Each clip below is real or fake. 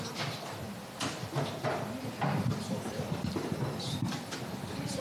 fake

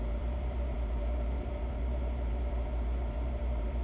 fake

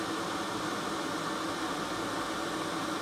real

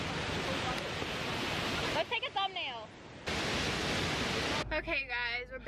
real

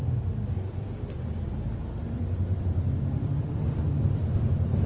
fake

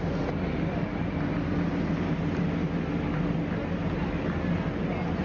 real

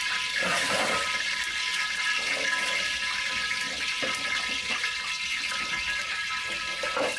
real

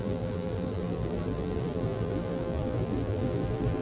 fake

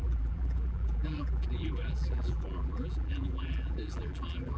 fake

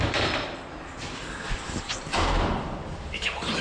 fake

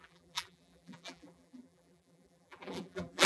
fake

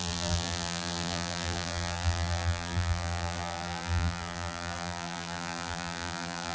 fake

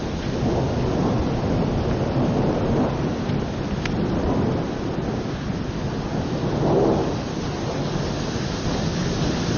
real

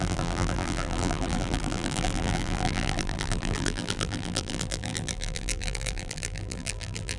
fake